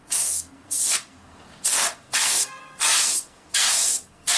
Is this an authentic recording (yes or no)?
no